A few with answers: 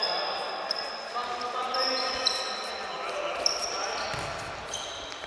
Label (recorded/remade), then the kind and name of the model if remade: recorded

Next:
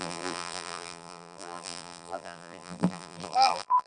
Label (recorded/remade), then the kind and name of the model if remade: remade, vocoder, BigVGAN v2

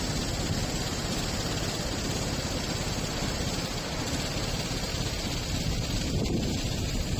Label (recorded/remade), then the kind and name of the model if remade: recorded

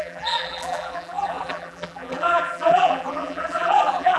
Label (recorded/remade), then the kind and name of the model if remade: remade, vocoder, BigVGAN v2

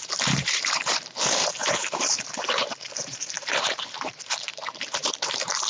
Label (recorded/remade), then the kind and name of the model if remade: remade, vocoder, BigVGAN v2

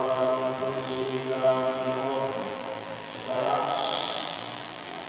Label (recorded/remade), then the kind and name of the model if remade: remade, vocoder, BigVGAN v2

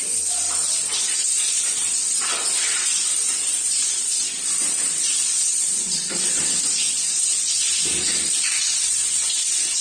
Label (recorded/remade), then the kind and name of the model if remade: recorded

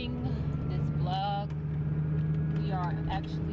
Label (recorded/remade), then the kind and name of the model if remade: recorded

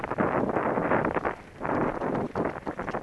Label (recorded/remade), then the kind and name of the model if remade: recorded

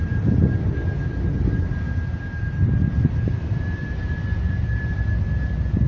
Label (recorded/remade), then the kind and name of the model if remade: remade, vocoder, BigVGAN v2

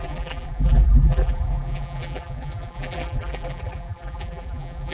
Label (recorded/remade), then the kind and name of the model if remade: remade, vocoder, BigVGAN v2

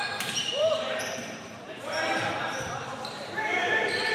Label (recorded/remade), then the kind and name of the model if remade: remade, vocoder, BigVGAN v2